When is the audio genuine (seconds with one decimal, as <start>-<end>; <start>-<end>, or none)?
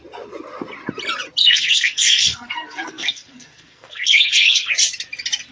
0.0-1.4; 4.7-5.5